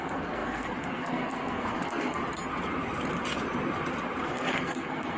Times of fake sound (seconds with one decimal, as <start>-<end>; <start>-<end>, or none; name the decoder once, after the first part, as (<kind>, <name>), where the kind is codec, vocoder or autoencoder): 0.0-2.2 (codec, SNAC); 4.2-5.2